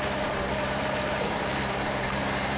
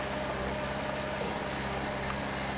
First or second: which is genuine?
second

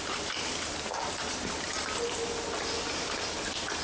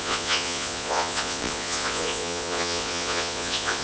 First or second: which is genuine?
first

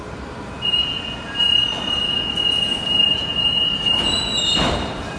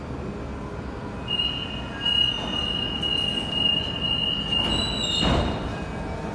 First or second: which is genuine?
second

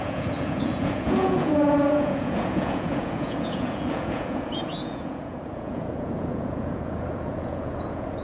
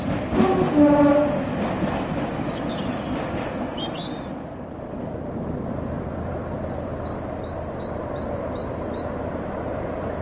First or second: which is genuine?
second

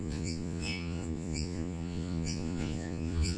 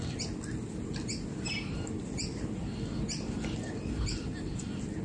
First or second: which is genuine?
second